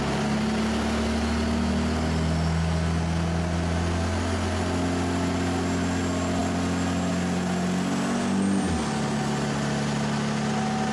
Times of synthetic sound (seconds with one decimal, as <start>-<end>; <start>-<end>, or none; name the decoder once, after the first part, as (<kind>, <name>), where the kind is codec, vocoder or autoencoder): none